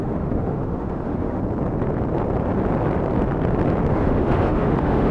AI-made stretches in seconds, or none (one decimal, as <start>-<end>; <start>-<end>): 0.0-1.4; 3.9-5.1